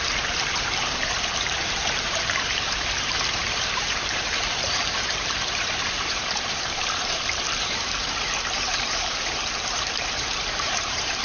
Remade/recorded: remade